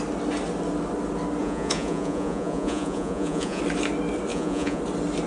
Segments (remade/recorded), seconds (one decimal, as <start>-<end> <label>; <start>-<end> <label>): 0.0-1.4 recorded; 1.4-3.6 remade; 3.6-4.3 recorded; 4.3-4.8 remade; 4.8-5.3 recorded